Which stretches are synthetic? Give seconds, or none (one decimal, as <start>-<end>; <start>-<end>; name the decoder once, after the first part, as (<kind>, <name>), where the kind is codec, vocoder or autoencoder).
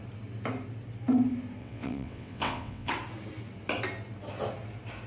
1.6-2.9 (vocoder, WaveNeXt)